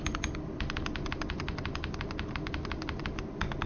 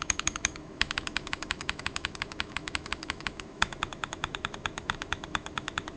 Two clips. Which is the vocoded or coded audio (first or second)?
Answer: second